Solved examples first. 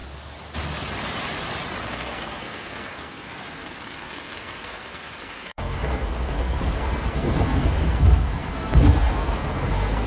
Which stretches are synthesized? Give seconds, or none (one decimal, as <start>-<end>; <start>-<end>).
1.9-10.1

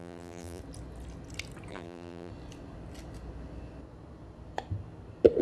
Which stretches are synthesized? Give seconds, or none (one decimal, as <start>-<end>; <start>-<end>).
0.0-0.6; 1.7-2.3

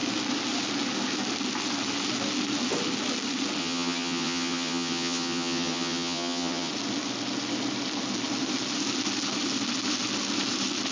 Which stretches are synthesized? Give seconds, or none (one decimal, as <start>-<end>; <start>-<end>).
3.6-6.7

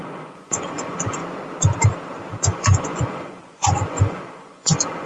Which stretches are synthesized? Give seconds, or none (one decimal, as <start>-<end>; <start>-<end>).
0.0-1.2; 2.5-5.1

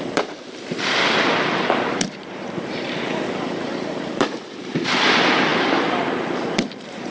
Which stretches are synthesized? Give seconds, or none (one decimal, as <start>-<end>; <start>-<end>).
0.0-7.1

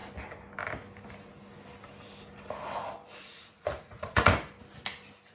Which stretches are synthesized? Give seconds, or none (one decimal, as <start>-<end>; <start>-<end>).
3.2-4.3

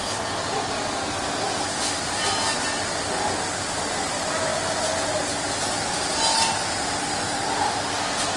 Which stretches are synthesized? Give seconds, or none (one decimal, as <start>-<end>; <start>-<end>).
none